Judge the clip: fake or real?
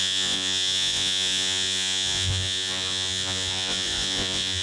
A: fake